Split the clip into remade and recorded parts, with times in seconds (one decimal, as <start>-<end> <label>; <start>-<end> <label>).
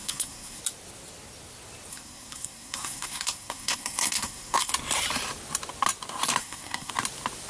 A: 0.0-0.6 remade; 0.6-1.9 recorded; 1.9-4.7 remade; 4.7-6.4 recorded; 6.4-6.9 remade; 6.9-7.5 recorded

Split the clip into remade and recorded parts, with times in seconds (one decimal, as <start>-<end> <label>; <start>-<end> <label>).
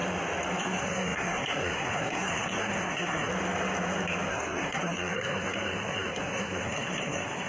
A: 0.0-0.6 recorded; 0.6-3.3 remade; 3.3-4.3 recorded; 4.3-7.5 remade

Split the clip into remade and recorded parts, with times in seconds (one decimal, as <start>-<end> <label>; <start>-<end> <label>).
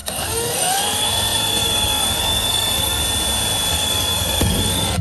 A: 0.0-3.0 remade; 3.0-3.7 recorded; 3.7-5.0 remade